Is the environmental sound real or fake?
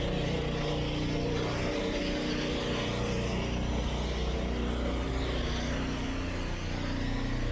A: real